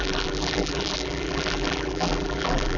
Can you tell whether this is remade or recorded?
remade